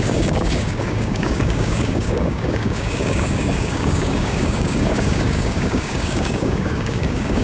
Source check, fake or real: fake